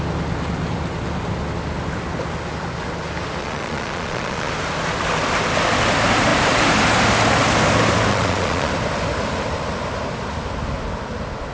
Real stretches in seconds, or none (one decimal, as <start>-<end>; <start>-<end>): 0.0-3.4; 4.5-8.1; 8.7-11.5